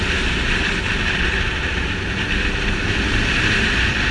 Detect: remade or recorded recorded